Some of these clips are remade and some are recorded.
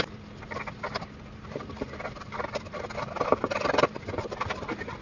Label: recorded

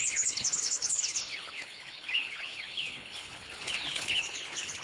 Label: remade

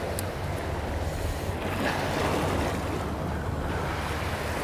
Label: recorded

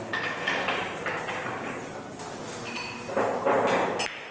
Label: recorded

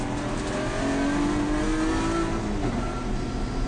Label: recorded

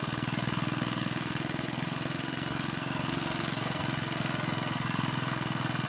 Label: remade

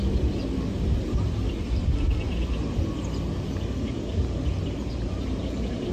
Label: recorded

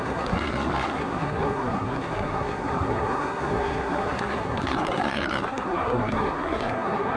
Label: remade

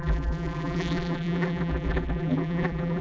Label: remade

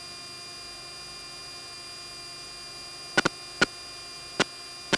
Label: recorded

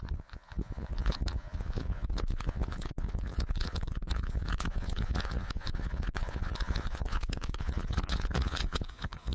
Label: remade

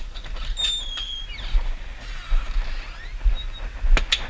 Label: recorded